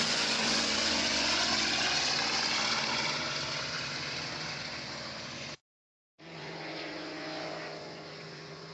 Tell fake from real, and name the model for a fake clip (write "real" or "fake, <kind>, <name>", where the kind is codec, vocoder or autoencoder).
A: fake, vocoder, Vocos